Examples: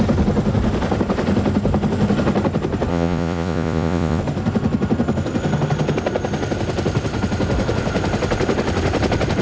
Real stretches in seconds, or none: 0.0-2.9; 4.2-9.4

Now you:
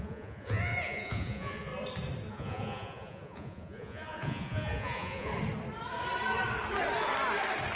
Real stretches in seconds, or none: 1.7-2.3; 5.3-7.8

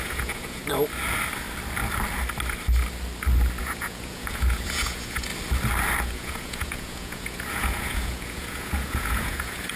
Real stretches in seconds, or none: 0.6-3.6; 5.3-6.0

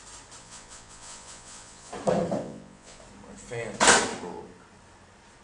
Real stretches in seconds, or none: 0.0-0.4; 1.9-2.4; 3.0-5.4

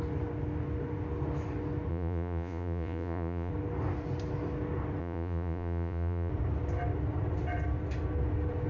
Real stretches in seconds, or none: 0.0-1.9; 3.5-5.0; 6.3-8.7

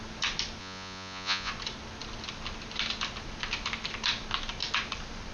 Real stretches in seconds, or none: 0.0-0.6; 1.5-5.3